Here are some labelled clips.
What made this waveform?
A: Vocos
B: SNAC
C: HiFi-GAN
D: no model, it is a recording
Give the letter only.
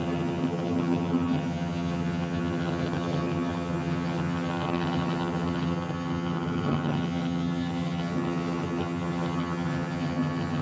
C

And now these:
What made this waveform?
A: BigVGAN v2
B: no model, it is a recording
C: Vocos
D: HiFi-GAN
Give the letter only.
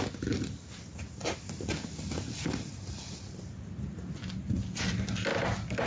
B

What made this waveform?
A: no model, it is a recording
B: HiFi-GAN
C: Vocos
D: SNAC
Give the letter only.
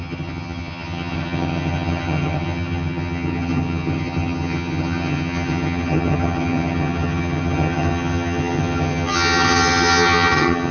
B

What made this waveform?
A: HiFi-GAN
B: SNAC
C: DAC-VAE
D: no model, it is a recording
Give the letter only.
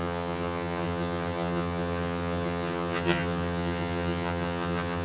A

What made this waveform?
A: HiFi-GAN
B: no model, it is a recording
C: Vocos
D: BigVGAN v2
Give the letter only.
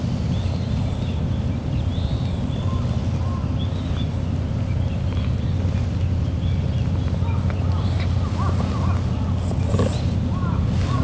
B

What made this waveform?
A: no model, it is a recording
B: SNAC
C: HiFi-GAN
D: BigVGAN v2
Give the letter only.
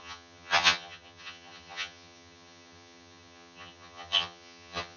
C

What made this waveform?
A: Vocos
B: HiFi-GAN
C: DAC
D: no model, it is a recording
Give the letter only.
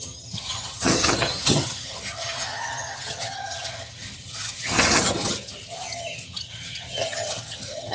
B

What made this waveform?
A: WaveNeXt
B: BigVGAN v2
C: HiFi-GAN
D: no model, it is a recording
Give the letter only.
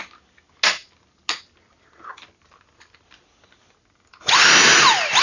D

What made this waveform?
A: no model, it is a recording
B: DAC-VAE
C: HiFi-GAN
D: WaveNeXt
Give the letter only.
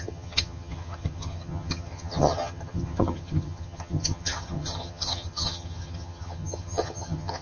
C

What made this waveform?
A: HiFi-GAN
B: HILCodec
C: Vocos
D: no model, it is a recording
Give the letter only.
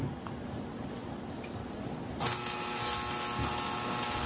D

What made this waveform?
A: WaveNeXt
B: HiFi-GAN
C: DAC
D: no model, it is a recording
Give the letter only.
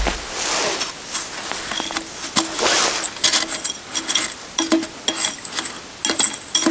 D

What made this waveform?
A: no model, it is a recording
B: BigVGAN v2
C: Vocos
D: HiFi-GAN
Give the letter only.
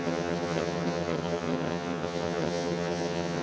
D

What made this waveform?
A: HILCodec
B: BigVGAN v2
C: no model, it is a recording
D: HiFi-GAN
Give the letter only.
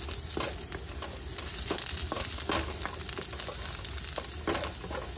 C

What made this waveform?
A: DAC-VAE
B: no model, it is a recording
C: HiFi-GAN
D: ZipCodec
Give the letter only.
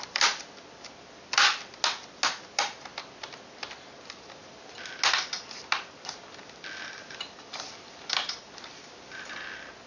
B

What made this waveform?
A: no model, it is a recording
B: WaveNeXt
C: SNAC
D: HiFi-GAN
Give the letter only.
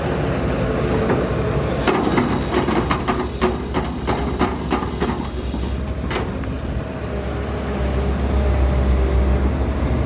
A